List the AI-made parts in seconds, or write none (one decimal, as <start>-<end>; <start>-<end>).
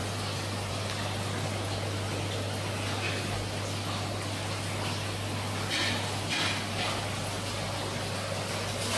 none